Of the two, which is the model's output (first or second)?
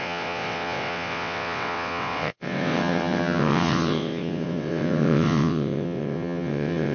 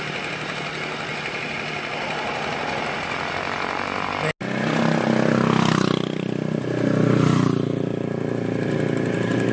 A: first